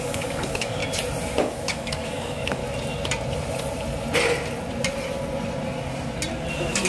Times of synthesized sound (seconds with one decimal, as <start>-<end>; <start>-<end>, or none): 0.0-0.8; 1.4-2.6; 6.5-6.9